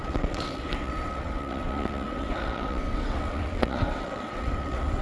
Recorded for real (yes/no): no